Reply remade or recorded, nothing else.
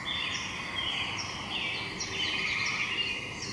recorded